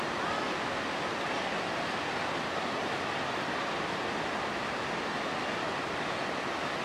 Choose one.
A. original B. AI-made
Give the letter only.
A